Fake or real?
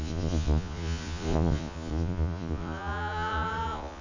fake